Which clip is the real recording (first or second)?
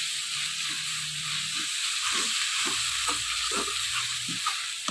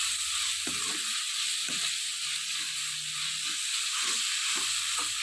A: second